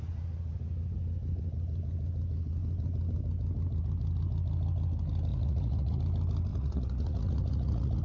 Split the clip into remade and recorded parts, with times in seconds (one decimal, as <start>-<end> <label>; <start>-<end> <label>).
0.0-5.3 recorded; 5.3-6.0 remade; 6.0-6.5 recorded; 6.5-8.0 remade